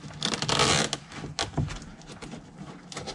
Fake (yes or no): no